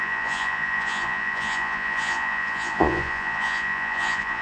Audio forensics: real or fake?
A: fake